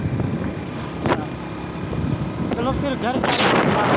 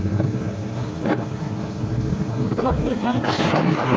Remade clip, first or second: second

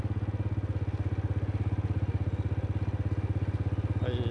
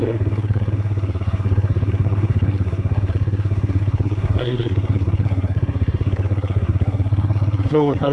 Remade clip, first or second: second